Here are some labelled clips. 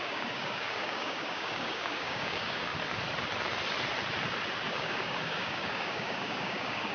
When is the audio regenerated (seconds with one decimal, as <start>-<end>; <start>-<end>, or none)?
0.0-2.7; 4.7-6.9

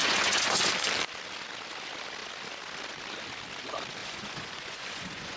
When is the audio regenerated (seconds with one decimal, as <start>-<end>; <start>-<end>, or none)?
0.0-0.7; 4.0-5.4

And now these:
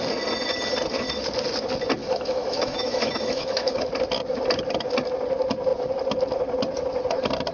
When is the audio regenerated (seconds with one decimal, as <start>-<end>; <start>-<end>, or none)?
2.0-3.9

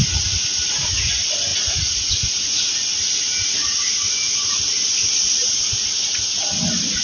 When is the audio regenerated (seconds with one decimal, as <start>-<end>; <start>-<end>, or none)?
none

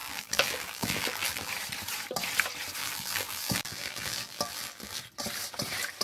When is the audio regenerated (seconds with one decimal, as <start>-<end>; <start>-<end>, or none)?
0.0-1.5; 2.8-5.0

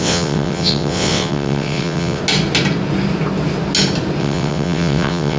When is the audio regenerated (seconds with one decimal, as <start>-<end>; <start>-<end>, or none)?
0.0-2.2; 4.2-5.4